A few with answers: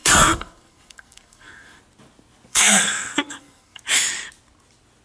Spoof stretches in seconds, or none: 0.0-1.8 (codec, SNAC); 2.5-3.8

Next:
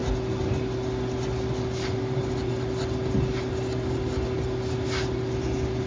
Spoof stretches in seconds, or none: none

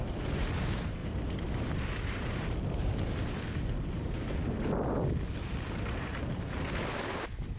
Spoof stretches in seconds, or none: 1.0-2.5 (vocoder, BigVGAN v2)